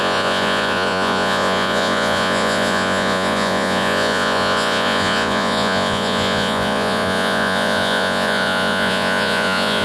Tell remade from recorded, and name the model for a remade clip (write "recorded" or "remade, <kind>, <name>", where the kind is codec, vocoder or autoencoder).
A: remade, vocoder, Vocos